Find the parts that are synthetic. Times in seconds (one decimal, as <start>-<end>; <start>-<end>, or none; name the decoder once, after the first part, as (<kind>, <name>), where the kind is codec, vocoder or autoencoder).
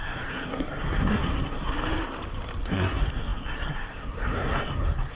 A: 0.0-1.7 (codec, SNAC); 2.6-5.2